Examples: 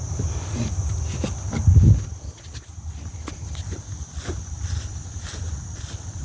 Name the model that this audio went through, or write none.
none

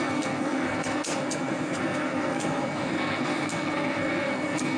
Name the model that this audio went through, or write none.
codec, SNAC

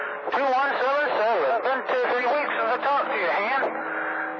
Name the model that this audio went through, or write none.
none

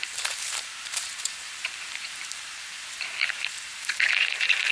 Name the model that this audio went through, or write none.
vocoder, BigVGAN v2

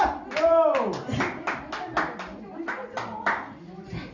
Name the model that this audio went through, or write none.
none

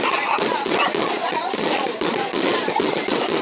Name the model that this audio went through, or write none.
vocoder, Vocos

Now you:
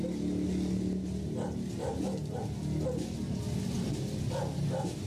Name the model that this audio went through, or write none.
none